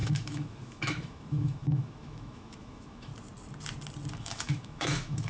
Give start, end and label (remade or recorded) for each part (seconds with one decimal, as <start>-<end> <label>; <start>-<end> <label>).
0.0-3.1 remade; 3.1-4.1 recorded; 4.1-5.3 remade